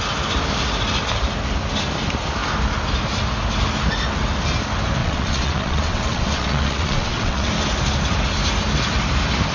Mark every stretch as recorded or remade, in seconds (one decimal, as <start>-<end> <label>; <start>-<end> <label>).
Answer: 0.0-5.0 recorded; 5.0-7.5 remade; 7.5-9.5 recorded